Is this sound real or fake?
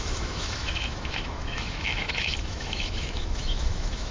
fake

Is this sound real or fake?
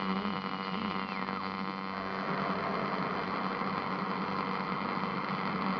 real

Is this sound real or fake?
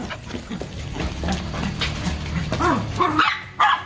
real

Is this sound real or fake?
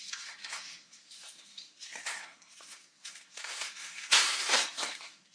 fake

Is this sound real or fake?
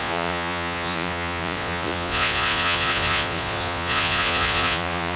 fake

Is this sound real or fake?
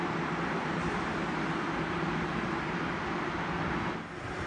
real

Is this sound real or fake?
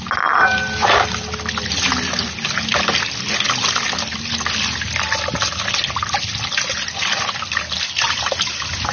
real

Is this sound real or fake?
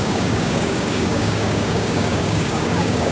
fake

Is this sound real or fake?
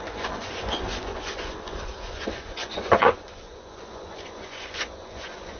fake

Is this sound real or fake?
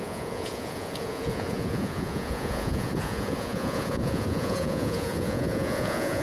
fake